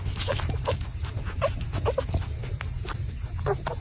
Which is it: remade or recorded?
recorded